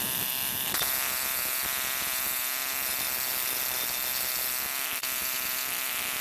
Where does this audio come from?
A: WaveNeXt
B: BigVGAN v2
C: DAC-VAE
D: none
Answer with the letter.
D